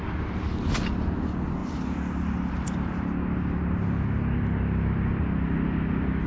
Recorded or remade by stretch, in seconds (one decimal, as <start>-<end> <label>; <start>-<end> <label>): 0.0-6.3 recorded

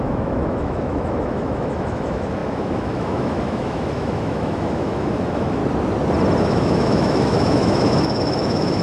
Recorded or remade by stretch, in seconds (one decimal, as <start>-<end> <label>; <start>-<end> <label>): 0.0-5.6 remade; 5.6-6.4 recorded; 6.4-8.8 remade